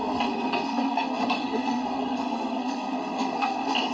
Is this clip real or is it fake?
fake